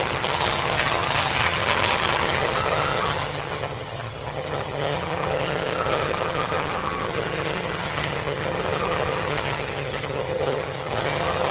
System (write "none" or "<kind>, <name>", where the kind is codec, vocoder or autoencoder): vocoder, HiFi-GAN